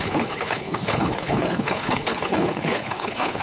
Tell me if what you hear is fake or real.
fake